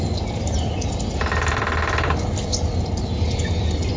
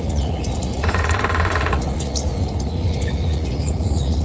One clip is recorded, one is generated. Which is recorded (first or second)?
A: first